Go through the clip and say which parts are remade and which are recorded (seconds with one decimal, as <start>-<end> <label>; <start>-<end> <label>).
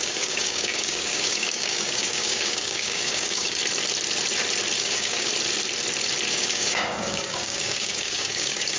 0.0-3.6 remade; 3.6-4.8 recorded; 4.8-5.3 remade; 5.3-6.3 recorded; 6.3-8.8 remade